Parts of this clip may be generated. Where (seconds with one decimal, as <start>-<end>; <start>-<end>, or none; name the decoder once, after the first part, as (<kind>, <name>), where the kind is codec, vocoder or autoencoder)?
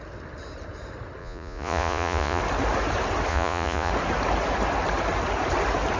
1.2-2.4 (vocoder, Vocos); 3.3-3.9